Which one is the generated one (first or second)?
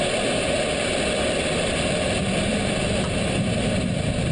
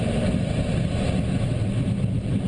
first